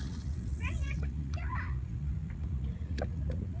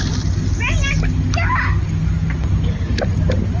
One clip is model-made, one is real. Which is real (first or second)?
second